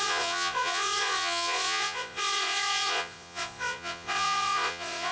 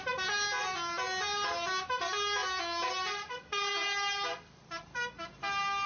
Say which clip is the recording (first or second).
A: second